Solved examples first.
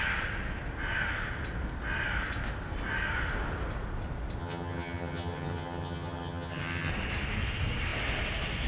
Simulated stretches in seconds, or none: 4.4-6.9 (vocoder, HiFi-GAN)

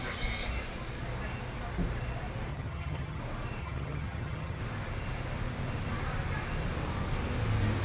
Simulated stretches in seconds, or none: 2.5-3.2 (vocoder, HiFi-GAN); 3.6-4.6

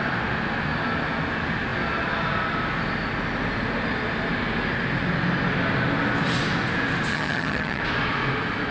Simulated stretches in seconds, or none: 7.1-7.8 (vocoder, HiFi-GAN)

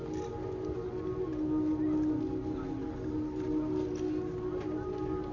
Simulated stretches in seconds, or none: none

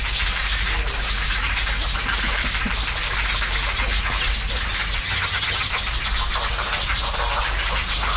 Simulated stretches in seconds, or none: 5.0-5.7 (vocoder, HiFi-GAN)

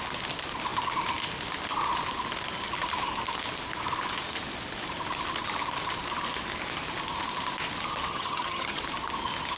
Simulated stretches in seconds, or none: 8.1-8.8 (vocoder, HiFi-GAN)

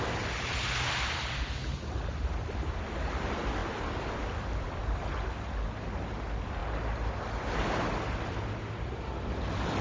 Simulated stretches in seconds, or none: none